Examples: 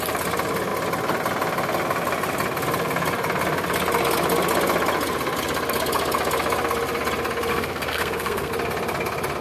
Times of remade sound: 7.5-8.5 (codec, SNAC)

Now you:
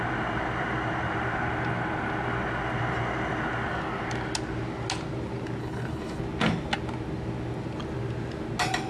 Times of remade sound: 5.6-6.2 (codec, HILCodec)